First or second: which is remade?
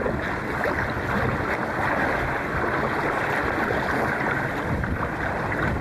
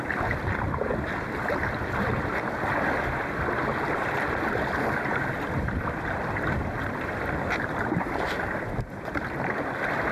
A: second